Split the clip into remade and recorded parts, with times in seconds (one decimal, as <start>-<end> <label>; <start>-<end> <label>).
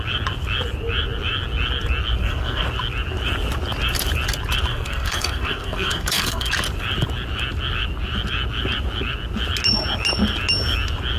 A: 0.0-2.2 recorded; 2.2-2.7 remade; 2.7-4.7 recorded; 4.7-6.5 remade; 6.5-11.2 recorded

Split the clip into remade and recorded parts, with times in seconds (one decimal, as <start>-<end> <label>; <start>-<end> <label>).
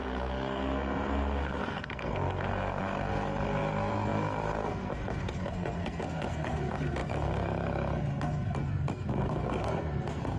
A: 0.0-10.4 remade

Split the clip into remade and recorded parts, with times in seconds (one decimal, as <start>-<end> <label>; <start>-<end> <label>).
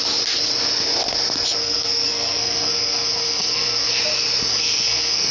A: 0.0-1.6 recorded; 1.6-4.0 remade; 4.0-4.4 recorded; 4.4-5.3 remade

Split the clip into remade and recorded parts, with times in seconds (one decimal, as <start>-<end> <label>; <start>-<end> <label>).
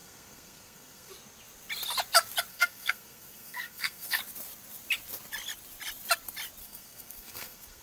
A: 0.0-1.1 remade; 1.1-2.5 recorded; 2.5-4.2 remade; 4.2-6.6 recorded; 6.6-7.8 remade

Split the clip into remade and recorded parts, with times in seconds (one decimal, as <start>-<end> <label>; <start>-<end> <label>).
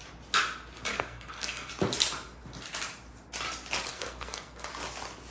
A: 0.0-0.9 recorded; 0.9-1.7 remade; 1.7-3.9 recorded; 3.9-4.7 remade; 4.7-5.3 recorded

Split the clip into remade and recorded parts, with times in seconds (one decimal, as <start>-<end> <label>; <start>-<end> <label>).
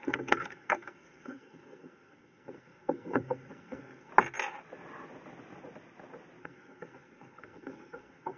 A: 0.0-4.1 remade; 4.1-6.4 recorded; 6.4-8.4 remade